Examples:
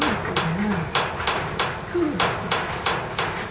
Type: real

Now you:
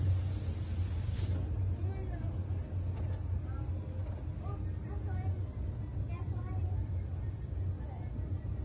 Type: real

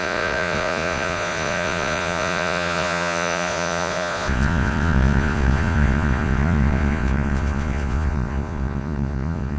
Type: fake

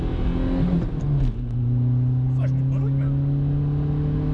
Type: real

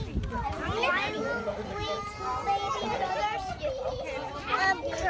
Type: real